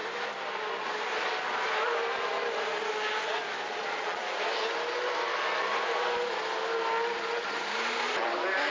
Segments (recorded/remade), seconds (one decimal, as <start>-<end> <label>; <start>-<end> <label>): 0.0-3.7 recorded; 3.7-4.2 remade; 4.2-8.7 recorded